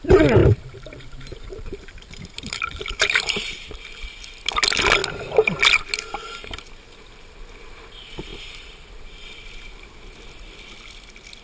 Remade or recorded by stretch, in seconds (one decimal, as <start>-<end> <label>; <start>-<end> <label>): 0.0-0.4 recorded; 0.4-4.0 remade; 4.0-11.4 recorded